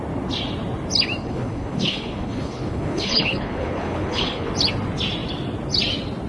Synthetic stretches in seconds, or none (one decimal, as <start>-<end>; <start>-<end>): 1.2-4.5